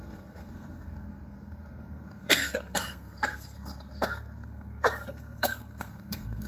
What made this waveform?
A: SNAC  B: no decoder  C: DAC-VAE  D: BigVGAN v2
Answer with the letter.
A